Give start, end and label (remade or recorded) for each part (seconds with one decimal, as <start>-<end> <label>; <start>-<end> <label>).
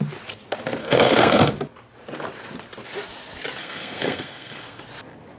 0.0-0.8 recorded; 0.8-1.5 remade; 1.5-3.6 recorded; 3.6-4.8 remade; 4.8-5.4 recorded